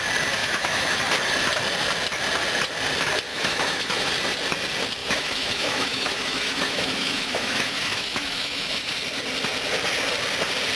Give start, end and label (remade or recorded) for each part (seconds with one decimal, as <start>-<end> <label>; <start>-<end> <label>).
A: 0.0-0.4 recorded; 0.4-1.0 remade; 1.0-3.3 recorded; 3.3-4.1 remade; 4.1-5.0 recorded; 5.0-8.9 remade; 8.9-10.8 recorded